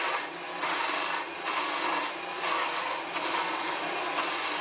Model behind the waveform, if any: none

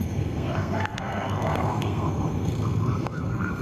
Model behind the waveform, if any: codec, SNAC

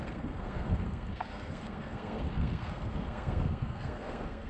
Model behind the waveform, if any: codec, SNAC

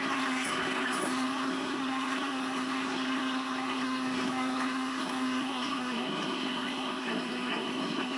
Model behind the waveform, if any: codec, SNAC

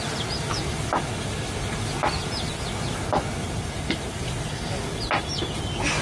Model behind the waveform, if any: none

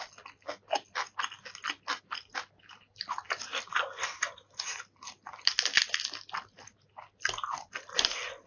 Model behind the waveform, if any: none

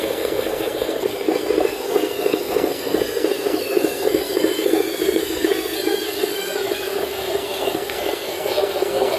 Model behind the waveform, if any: codec, SNAC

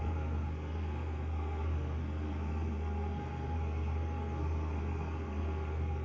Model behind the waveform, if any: codec, SNAC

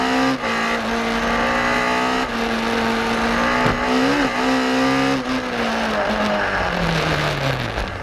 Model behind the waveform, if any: none